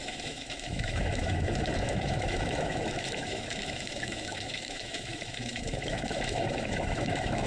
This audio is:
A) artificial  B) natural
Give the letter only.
A